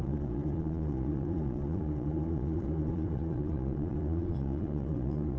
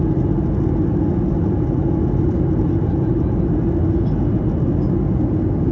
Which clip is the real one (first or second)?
second